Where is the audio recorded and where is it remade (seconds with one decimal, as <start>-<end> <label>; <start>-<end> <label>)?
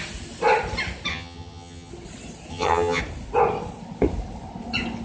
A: 0.0-1.1 recorded; 1.1-1.9 remade; 1.9-2.5 recorded; 2.5-3.0 remade; 3.0-5.0 recorded